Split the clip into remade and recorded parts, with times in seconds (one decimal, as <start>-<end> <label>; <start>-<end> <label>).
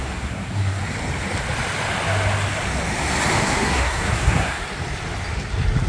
0.0-0.8 remade; 0.8-3.4 recorded; 3.4-4.6 remade; 4.6-5.9 recorded